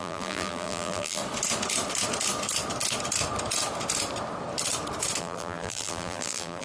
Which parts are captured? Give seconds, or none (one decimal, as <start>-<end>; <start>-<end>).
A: 1.2-5.2